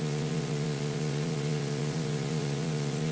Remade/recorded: remade